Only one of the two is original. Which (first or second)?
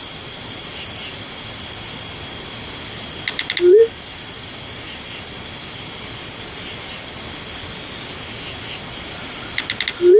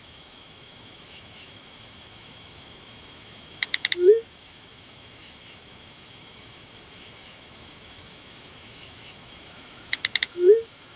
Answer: first